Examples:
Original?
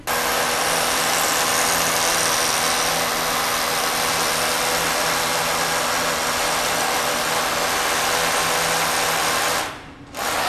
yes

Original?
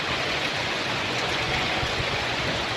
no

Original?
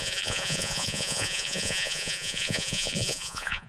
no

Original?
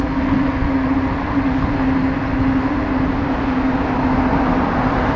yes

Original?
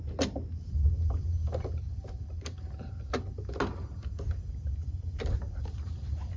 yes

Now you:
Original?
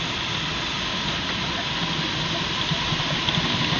yes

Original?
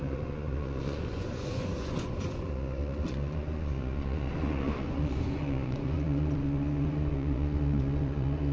no